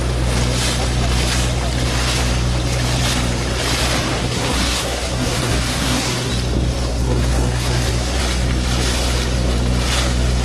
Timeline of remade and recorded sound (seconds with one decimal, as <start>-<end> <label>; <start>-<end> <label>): 0.0-4.1 recorded; 4.1-6.3 remade; 6.3-6.9 recorded; 6.9-8.2 remade; 8.2-10.4 recorded